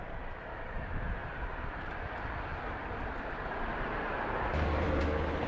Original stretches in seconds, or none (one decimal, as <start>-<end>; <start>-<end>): 0.0-1.2; 2.1-4.5; 5.0-5.5